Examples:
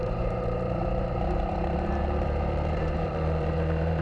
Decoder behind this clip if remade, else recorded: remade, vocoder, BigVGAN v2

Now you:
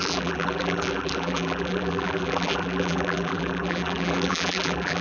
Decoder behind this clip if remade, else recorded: remade, vocoder, BigVGAN v2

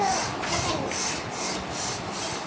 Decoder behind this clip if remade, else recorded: recorded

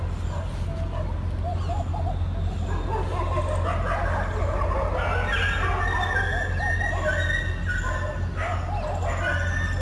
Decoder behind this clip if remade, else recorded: recorded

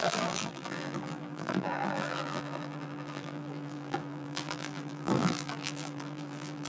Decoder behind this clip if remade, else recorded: remade, vocoder, BigVGAN v2